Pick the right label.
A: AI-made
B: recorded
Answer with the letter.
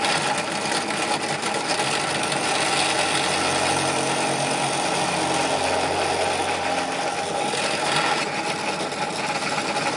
B